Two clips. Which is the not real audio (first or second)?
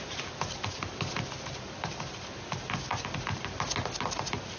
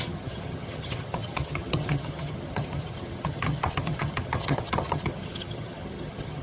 second